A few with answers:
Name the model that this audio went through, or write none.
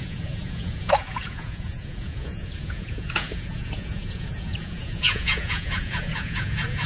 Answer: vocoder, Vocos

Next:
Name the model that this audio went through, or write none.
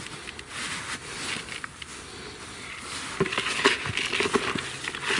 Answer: none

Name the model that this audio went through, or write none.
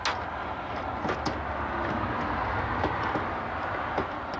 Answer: none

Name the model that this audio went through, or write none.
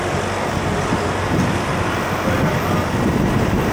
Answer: none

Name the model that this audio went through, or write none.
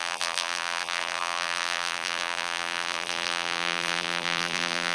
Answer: vocoder, BigVGAN v2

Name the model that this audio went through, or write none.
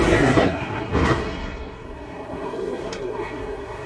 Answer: codec, SNAC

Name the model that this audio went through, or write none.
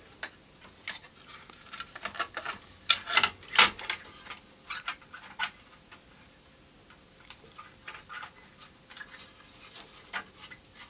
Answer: none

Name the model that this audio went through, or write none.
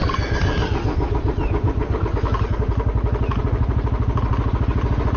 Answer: none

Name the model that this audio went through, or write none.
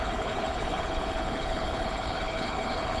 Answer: codec, HILCodec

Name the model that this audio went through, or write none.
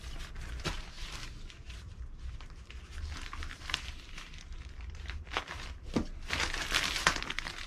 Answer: none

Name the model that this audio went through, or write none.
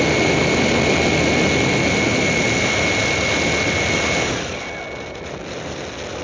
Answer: none